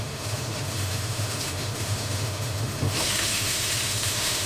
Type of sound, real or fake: fake